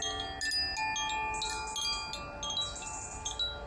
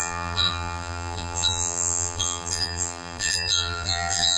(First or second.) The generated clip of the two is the second